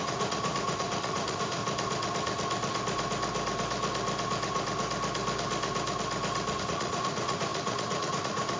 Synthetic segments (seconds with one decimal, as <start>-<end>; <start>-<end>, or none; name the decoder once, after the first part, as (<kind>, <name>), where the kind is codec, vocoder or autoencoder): 0.0-1.6 (vocoder, Vocos); 6.6-8.6